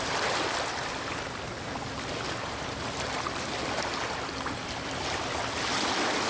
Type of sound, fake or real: real